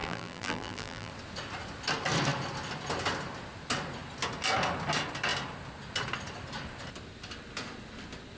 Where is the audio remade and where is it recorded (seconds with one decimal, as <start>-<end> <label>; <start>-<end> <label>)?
0.0-1.1 remade; 1.1-8.4 recorded